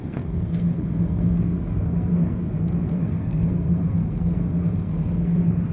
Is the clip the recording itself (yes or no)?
no